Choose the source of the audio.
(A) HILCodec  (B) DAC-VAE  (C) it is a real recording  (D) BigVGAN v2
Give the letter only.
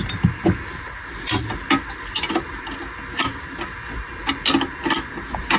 C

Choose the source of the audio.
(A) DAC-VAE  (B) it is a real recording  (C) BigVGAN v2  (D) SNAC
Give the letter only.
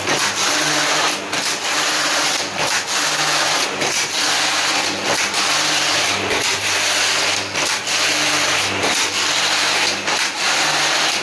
B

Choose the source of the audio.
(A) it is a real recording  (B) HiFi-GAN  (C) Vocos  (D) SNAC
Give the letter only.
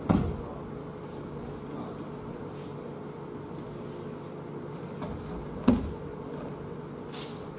A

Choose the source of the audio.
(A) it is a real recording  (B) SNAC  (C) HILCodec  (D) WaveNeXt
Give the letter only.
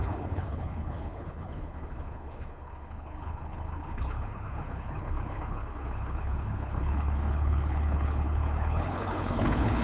C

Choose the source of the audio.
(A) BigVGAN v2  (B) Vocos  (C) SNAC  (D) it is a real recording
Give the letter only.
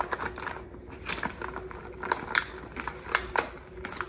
D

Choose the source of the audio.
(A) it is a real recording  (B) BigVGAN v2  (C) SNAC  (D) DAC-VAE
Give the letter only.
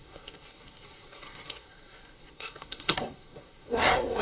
C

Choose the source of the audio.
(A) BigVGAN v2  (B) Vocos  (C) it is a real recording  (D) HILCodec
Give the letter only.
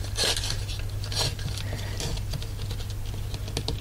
C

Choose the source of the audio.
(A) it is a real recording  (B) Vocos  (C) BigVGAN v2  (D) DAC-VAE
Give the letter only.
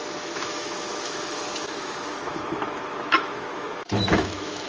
D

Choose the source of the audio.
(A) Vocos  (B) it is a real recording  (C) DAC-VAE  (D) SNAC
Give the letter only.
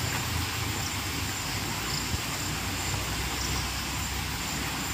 B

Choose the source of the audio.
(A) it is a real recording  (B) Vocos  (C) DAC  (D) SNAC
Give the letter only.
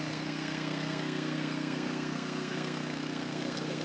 D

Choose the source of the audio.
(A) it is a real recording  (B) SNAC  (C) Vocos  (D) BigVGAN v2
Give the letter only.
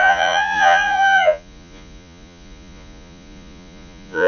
C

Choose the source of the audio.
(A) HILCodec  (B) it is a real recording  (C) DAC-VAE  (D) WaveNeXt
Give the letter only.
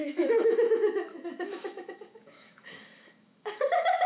C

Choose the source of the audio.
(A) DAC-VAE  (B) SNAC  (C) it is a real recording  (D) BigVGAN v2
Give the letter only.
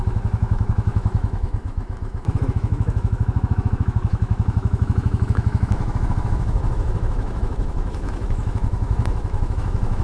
A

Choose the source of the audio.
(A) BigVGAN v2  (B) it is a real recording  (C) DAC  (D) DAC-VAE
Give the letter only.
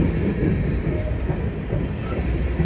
B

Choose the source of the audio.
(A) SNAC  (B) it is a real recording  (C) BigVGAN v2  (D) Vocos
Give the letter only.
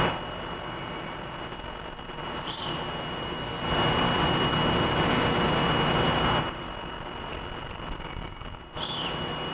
C